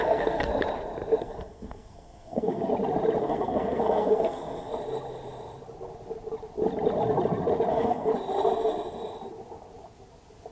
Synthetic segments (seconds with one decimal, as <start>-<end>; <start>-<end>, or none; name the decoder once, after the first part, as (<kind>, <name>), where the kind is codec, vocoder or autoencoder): 0.0-0.5 (codec, SNAC); 1.2-2.7; 3.2-4.7; 7.7-8.1